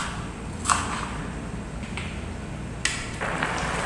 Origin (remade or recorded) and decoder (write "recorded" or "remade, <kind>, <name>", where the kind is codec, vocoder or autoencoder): recorded